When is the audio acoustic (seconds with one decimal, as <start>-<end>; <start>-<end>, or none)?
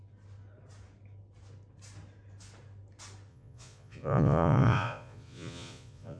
0.0-3.3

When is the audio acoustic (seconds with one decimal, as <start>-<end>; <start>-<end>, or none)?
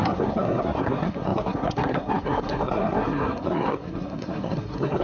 none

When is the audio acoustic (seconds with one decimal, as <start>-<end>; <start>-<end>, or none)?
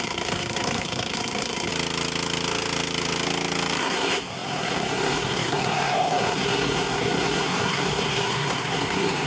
1.7-3.8